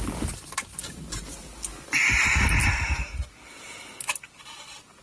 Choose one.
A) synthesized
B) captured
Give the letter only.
B